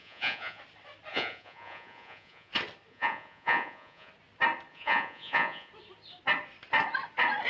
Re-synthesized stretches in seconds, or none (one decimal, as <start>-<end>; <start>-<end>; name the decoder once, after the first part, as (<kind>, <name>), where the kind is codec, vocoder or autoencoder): 0.0-0.6 (vocoder, Vocos); 1.1-2.5; 2.9-4.1; 4.7-5.7